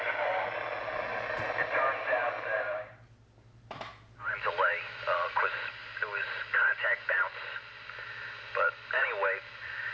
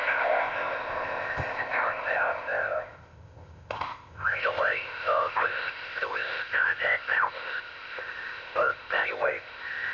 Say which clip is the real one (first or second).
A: first